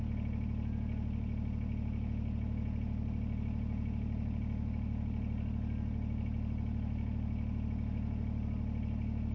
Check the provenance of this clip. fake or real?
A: real